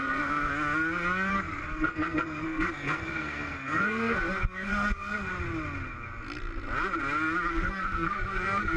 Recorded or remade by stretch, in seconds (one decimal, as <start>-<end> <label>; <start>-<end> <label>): 0.0-0.5 remade; 0.5-1.3 recorded; 1.3-5.3 remade; 5.3-7.5 recorded; 7.5-8.8 remade